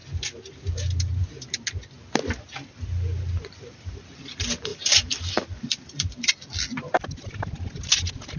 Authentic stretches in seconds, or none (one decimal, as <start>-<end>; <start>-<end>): 0.0-4.7; 6.3-8.4

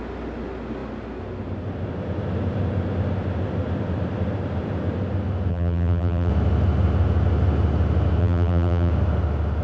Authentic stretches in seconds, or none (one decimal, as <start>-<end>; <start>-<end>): 0.0-5.5; 6.3-8.2; 8.9-9.6

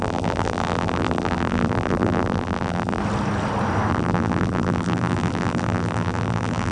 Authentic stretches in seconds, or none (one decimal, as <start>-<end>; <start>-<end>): 3.0-3.9

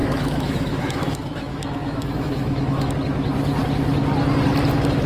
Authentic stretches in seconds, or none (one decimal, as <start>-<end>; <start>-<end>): 2.9-5.1